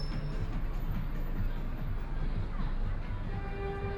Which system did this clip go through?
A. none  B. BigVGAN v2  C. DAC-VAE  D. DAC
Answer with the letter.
A